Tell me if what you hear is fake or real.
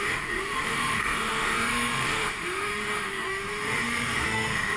fake